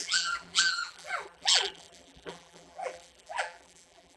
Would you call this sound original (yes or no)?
no